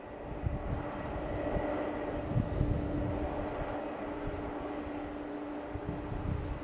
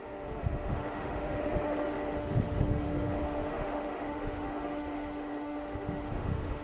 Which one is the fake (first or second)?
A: second